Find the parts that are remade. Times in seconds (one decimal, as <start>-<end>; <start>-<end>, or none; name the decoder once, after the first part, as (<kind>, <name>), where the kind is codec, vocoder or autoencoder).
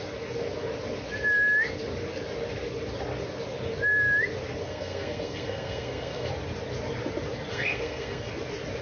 4.6-6.3 (codec, SNAC); 7.5-8.3